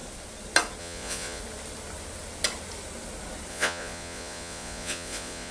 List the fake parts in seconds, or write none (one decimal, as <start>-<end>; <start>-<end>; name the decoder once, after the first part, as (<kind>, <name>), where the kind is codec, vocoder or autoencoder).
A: 0.8-1.4 (vocoder, Vocos); 3.5-5.5